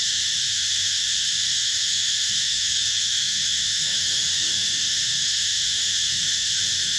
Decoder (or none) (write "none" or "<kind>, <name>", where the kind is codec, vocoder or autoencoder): autoencoder, DAC-VAE